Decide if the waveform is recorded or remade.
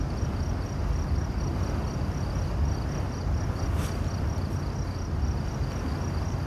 recorded